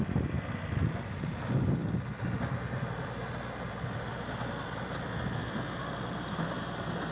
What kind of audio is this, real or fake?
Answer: real